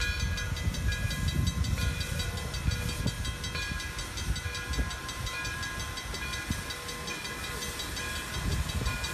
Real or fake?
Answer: real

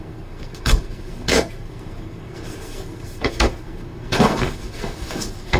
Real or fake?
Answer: fake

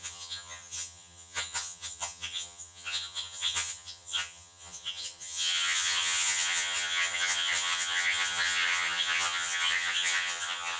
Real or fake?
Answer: fake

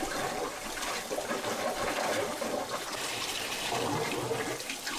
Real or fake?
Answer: fake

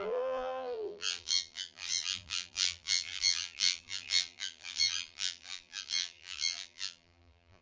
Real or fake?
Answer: fake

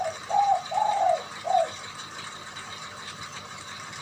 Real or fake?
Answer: fake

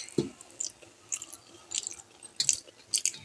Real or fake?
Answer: real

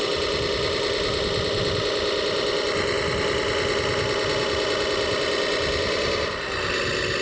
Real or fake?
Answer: real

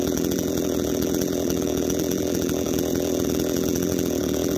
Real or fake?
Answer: fake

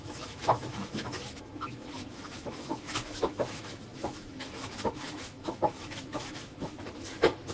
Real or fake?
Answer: fake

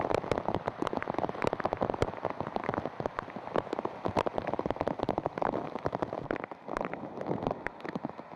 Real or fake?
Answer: real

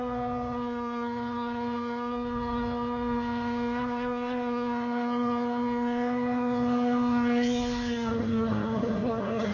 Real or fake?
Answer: fake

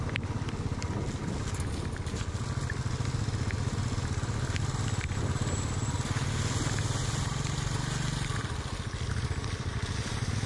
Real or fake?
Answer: real